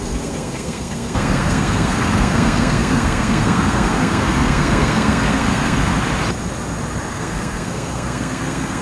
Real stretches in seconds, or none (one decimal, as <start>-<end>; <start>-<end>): 5.9-7.1